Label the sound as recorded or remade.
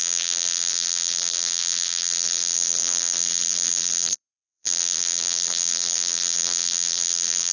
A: remade